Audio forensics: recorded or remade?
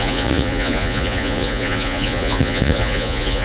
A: remade